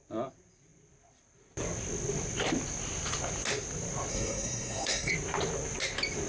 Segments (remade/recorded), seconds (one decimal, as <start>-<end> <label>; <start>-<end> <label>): 0.0-4.1 recorded; 4.1-5.1 remade; 5.1-6.3 recorded